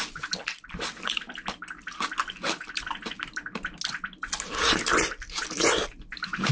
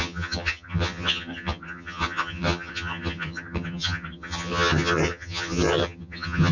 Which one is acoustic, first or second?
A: first